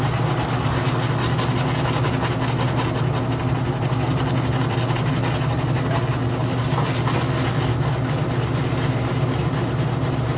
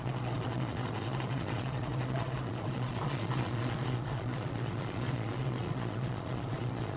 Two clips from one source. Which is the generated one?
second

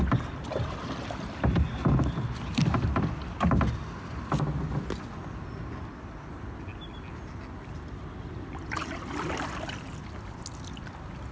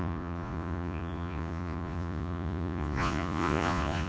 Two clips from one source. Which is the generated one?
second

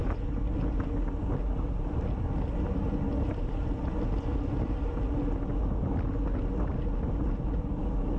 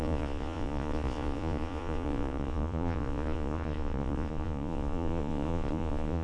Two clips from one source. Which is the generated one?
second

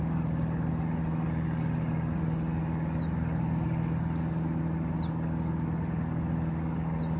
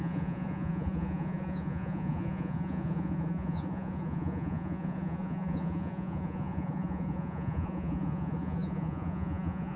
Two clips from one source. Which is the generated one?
second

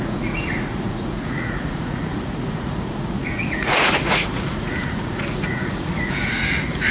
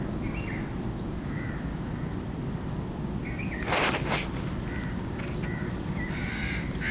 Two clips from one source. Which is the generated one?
first